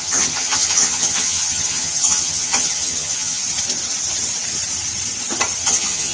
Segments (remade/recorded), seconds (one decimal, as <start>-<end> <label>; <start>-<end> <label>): 0.0-3.4 remade; 3.4-5.6 recorded; 5.6-6.1 remade